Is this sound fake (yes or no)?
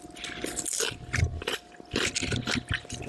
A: no